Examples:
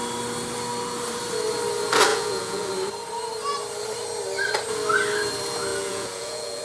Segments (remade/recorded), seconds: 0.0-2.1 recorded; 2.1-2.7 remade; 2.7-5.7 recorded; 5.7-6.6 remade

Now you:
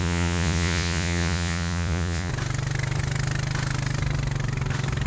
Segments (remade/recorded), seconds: 0.0-2.3 remade; 2.3-5.1 recorded

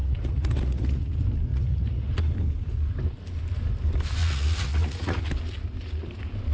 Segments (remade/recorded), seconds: 0.0-1.1 remade; 1.1-1.5 recorded; 1.5-2.1 remade; 2.1-4.2 recorded; 4.2-5.2 remade; 5.2-6.5 recorded

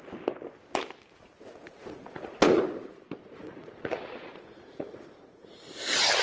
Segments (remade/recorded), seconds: 0.0-1.6 recorded; 1.6-2.6 remade; 2.6-3.2 recorded; 3.2-5.6 remade; 5.6-6.2 recorded

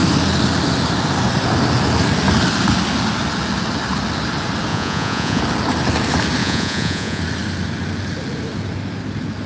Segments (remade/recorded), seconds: 0.0-4.7 recorded; 4.7-5.4 remade; 5.4-6.4 recorded; 6.4-7.2 remade; 7.2-9.5 recorded

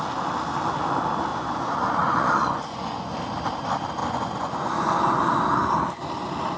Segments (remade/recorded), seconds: 0.0-1.3 recorded; 1.3-3.2 remade; 3.2-4.0 recorded; 4.0-5.0 remade; 5.0-6.6 recorded

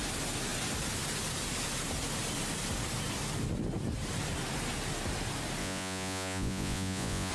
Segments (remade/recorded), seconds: 0.0-5.6 recorded; 5.6-7.3 remade

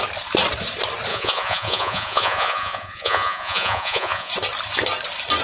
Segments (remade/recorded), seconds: 0.0-1.1 recorded; 1.1-4.3 remade; 4.3-5.4 recorded